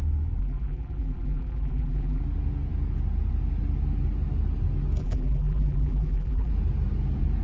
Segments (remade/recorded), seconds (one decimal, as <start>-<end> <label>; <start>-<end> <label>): 0.0-0.4 recorded; 0.4-2.2 remade; 2.2-5.0 recorded; 5.0-6.5 remade; 6.5-7.4 recorded